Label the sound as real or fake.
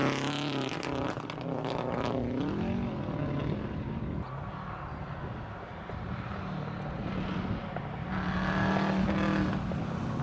real